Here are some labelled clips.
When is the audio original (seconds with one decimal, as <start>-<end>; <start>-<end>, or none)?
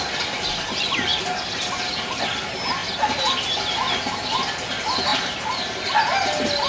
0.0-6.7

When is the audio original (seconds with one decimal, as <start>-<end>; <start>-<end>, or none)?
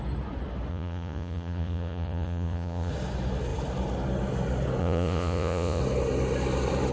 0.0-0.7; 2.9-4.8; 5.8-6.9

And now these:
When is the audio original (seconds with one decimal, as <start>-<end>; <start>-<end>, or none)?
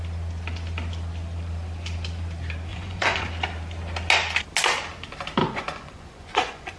0.0-2.7; 3.3-5.4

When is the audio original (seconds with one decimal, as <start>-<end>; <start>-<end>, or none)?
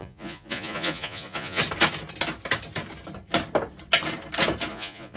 1.6-4.7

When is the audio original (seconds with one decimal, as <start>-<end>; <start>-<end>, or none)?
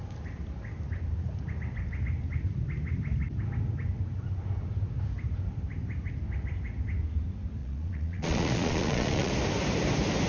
0.0-7.6; 9.3-10.3